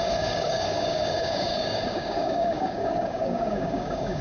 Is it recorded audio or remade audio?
remade